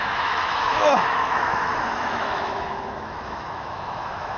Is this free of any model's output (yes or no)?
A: no